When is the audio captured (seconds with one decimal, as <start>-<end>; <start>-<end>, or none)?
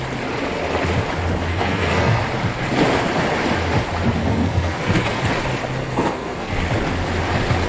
0.0-1.5; 2.2-4.2; 5.2-5.8; 6.6-7.7